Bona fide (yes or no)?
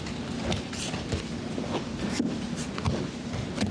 yes